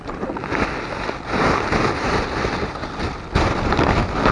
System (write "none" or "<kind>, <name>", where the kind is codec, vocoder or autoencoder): none